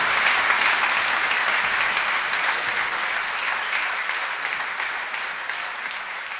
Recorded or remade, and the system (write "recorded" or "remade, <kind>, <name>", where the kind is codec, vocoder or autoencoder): recorded